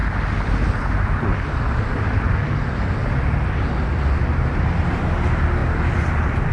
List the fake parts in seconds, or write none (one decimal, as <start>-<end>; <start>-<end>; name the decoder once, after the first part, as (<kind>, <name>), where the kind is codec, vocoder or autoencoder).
4.3-5.0 (vocoder, BigVGAN v2)